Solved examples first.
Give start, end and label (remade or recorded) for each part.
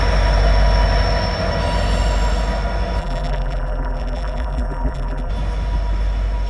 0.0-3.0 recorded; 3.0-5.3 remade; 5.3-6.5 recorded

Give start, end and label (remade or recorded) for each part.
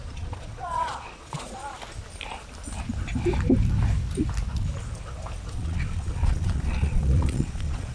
0.0-1.6 remade; 1.6-5.5 recorded; 5.5-7.9 remade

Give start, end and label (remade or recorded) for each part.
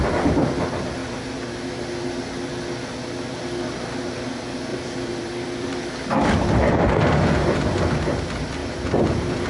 0.0-4.7 recorded; 4.7-5.9 remade; 5.9-6.6 recorded; 6.6-7.8 remade; 7.8-8.6 recorded; 8.6-9.5 remade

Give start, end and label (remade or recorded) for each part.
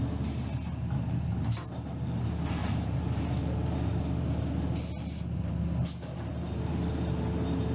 0.0-7.7 recorded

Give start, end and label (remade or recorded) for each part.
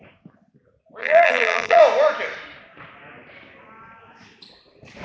0.0-1.0 recorded; 1.0-1.8 remade; 1.8-5.0 recorded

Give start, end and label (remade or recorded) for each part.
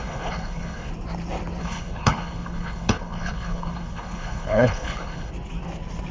0.0-0.9 remade; 0.9-1.6 recorded; 1.6-5.3 remade; 5.3-6.1 recorded